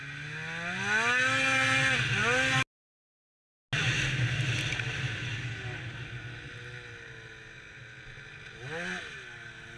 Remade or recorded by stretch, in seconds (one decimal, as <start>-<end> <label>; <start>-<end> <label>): 0.0-9.8 recorded